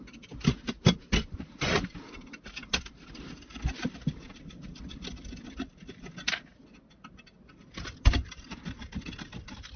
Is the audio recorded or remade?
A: recorded